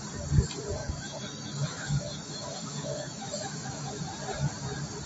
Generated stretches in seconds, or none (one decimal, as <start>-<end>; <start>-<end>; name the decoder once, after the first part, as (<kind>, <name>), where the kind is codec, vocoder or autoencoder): 0.8-3.9 (autoencoder, DAC-VAE)